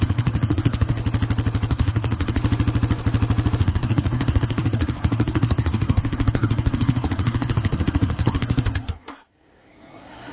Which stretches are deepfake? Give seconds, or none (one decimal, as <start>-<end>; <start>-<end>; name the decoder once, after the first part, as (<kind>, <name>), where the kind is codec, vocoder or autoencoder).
0.0-1.0 (codec, SNAC); 1.7-2.4; 3.6-10.3

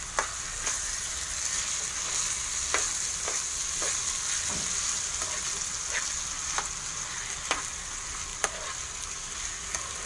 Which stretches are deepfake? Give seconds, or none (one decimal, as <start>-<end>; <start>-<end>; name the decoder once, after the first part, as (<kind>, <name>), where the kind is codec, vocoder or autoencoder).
none